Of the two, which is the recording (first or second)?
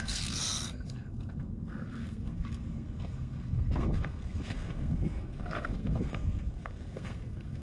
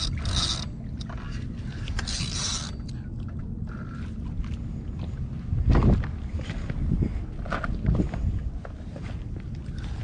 second